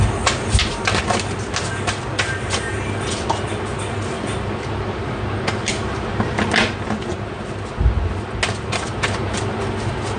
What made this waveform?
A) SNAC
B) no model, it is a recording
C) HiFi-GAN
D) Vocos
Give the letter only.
B